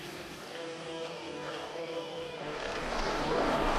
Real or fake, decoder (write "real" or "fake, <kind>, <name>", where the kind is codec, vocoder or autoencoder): fake, codec, DAC